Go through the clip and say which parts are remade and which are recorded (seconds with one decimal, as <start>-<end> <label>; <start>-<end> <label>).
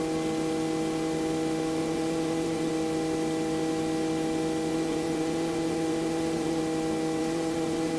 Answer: 0.0-1.8 recorded; 1.8-2.7 remade; 2.7-4.7 recorded; 4.7-6.6 remade; 6.6-7.2 recorded; 7.2-8.0 remade